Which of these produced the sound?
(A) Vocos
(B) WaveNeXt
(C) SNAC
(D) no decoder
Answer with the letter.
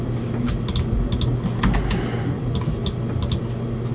D